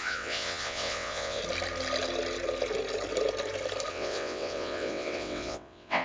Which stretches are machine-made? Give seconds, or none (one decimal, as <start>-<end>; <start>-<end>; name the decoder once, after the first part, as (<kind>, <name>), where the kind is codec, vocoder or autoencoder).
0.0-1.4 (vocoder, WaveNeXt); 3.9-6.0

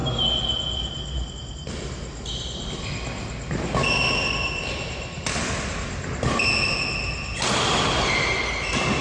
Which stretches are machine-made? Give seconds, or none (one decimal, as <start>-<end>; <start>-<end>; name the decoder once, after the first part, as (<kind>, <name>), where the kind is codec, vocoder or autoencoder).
none

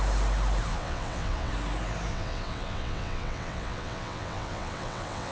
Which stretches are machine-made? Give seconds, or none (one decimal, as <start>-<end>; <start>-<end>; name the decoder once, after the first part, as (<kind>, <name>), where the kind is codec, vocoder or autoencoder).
0.7-1.5 (vocoder, WaveNeXt); 2.1-5.3